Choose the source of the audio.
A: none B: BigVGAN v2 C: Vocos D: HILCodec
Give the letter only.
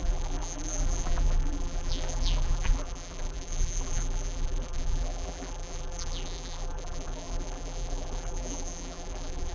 B